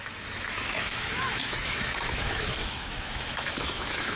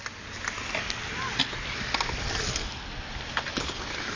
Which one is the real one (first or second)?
second